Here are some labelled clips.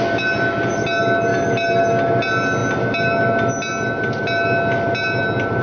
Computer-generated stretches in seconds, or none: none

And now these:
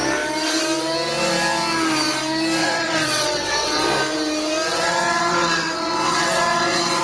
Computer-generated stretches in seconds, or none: 2.6-3.8 (vocoder, WaveNeXt); 4.7-7.0

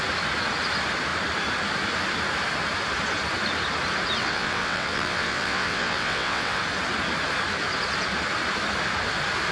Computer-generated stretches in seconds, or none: 4.2-6.6 (vocoder, WaveNeXt)

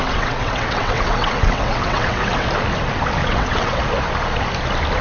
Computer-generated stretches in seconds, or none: 0.0-2.5 (vocoder, WaveNeXt); 3.2-3.8

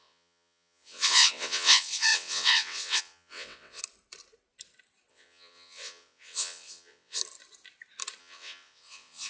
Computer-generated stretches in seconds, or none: 0.0-3.8 (vocoder, WaveNeXt); 5.1-7.2; 8.2-9.3

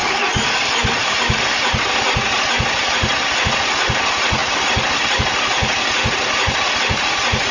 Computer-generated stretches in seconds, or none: none

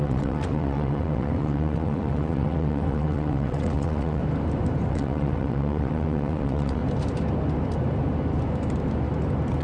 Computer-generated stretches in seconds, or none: 0.0-4.2 (vocoder, WaveNeXt); 4.9-6.8